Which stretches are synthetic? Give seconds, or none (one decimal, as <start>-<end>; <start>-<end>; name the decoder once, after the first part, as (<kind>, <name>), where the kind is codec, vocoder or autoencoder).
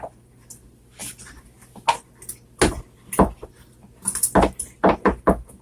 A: none